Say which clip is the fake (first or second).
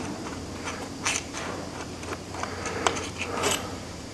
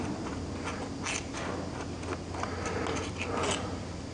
first